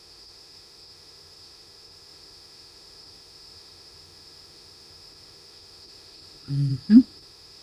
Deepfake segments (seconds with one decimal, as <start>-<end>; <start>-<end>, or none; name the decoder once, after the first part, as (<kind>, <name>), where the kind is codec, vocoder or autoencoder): 0.0-7.6 (autoencoder, DAC-VAE)